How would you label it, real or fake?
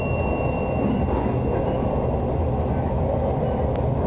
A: real